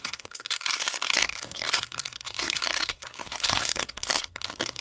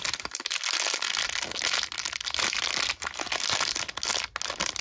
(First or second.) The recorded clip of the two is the second